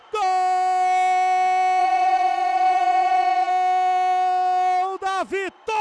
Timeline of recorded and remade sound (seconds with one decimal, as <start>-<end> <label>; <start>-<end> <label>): 0.0-1.8 recorded; 1.8-3.5 remade; 3.5-5.8 recorded